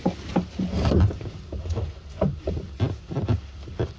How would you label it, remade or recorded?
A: recorded